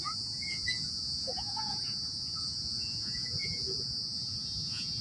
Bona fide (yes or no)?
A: no